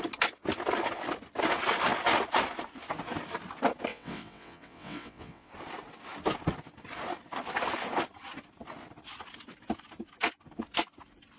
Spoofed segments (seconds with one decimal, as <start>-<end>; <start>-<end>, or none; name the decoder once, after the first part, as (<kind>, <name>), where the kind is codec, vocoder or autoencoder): 3.9-5.5 (vocoder, WaveNeXt)